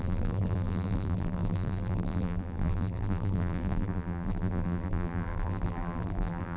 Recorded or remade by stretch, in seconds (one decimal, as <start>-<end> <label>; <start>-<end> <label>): 0.0-6.6 remade